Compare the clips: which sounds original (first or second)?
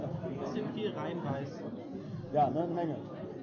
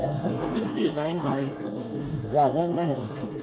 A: first